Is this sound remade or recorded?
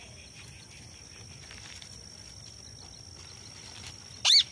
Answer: recorded